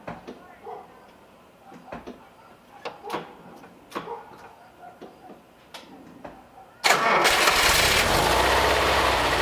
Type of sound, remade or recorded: recorded